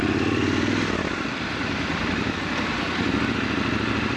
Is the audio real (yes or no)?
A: no